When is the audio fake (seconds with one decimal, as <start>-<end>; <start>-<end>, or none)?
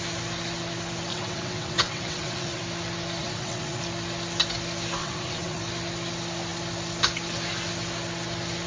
1.1-2.6; 3.2-3.8; 5.0-5.6